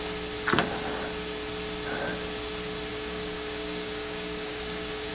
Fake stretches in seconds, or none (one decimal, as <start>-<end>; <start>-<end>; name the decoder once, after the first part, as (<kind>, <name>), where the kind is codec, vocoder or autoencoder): 2.9-5.1 (codec, DAC)